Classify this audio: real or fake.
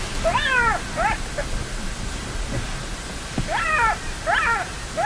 real